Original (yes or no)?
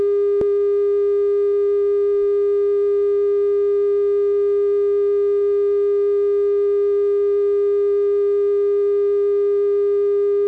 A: yes